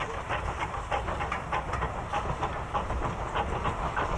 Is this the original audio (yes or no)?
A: yes